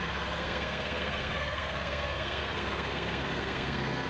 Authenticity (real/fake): fake